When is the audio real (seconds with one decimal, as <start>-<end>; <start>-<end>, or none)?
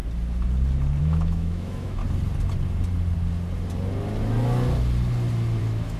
0.0-1.0; 2.0-5.6